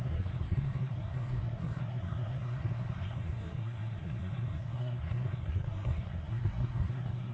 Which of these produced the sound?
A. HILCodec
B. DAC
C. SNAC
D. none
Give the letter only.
C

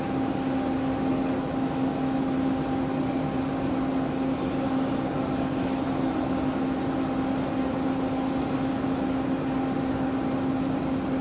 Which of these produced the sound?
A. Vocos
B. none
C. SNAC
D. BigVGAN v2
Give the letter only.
B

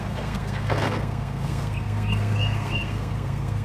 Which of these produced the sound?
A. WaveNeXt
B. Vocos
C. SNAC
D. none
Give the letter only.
C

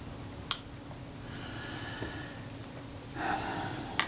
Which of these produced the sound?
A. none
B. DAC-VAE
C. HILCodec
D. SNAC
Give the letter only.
A